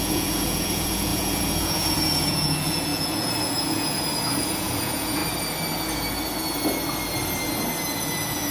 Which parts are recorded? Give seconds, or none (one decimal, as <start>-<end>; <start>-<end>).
5.2-8.0